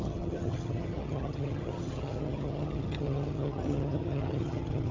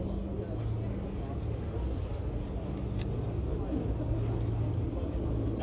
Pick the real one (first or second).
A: second